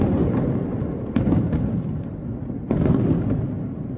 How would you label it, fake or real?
real